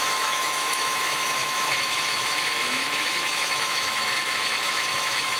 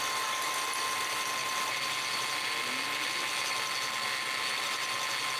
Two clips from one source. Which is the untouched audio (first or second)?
second